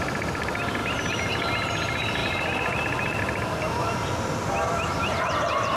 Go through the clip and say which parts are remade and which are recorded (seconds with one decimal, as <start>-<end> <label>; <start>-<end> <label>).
0.0-0.8 recorded; 0.8-1.3 remade; 1.3-2.2 recorded; 2.2-3.2 remade; 3.2-5.0 recorded; 5.0-5.8 remade